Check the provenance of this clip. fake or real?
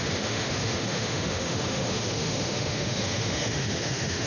fake